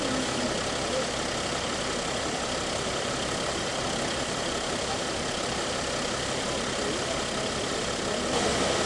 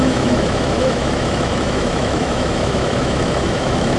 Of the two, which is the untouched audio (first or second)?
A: first